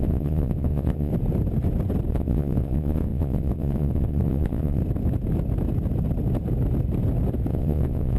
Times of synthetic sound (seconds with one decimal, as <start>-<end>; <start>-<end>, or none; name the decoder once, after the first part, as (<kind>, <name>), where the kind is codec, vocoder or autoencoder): 0.0-1.1 (vocoder, Vocos); 2.1-4.8; 7.5-8.2